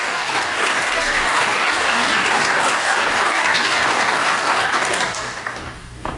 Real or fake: fake